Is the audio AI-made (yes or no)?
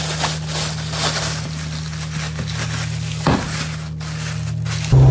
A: no